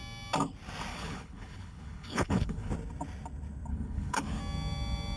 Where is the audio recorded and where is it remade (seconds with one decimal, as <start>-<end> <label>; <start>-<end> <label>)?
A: 0.0-0.9 recorded; 0.9-2.7 remade; 2.7-3.7 recorded; 3.7-4.4 remade; 4.4-5.2 recorded